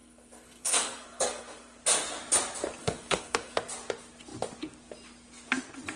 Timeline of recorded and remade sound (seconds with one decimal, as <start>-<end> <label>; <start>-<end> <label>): 0.0-1.8 remade; 1.8-2.8 recorded; 2.8-3.6 remade; 3.6-6.0 recorded